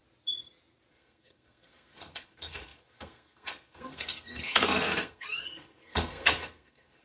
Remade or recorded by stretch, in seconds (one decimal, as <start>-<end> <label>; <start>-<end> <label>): 0.0-0.9 recorded; 0.9-7.0 remade